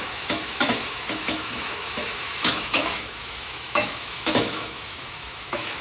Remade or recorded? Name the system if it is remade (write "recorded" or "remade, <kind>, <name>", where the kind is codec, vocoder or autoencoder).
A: remade, autoencoder, DAC-VAE